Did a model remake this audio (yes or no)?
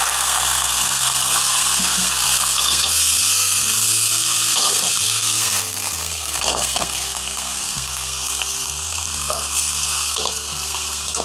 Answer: yes